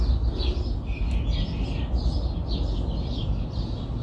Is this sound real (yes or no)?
yes